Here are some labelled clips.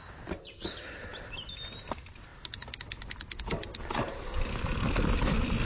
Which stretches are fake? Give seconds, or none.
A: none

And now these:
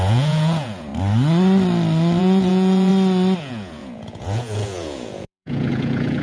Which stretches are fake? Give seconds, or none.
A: 0.0-0.9 (vocoder, Vocos); 2.2-2.9; 3.4-6.2

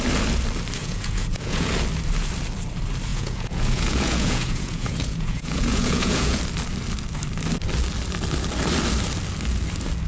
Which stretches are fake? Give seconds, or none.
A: 0.8-1.7 (vocoder, Vocos); 3.1-6.4

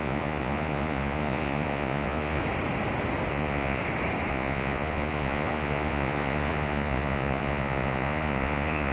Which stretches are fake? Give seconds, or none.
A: 0.0-2.4 (vocoder, Vocos); 3.3-3.8; 4.3-8.9

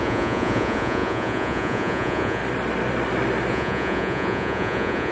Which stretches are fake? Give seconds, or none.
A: 0.0-2.4 (vocoder, Vocos); 3.5-5.1

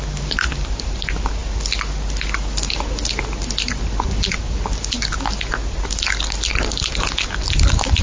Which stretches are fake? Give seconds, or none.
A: none

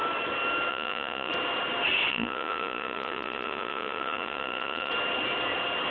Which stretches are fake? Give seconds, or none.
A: 0.7-1.3 (vocoder, Vocos); 2.1-4.9

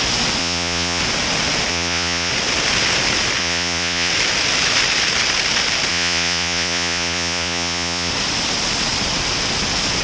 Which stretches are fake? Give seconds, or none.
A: 0.4-1.0 (vocoder, Vocos); 1.7-2.3; 3.4-4.1; 5.9-8.1